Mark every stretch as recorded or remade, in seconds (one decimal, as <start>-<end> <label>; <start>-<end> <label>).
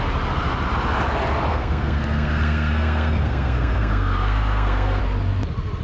0.0-1.5 recorded; 1.5-5.0 remade; 5.0-5.8 recorded